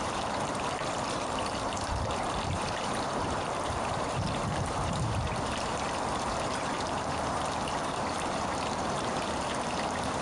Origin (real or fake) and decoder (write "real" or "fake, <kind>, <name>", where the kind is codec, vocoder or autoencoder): fake, vocoder, BigVGAN v2